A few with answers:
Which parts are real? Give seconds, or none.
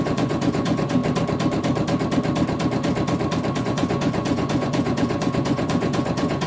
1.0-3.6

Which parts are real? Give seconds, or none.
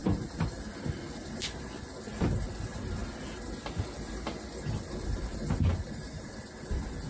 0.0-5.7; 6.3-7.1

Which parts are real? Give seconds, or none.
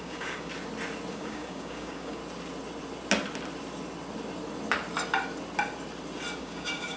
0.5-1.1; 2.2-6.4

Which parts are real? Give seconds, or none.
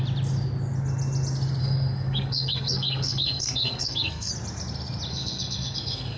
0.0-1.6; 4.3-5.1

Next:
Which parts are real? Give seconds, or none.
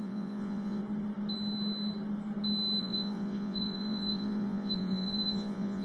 0.8-2.8